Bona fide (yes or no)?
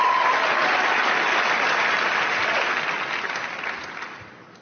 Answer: yes